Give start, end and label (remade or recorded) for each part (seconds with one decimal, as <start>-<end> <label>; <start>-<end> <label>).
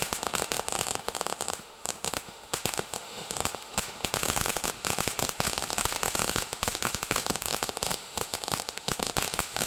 0.0-9.7 remade